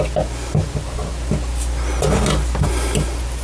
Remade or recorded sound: recorded